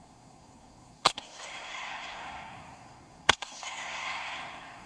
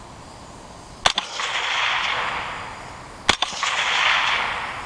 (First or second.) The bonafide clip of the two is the second